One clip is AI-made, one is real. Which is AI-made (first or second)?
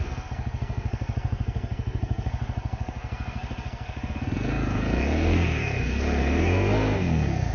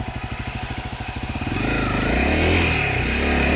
first